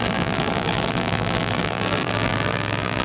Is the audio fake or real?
fake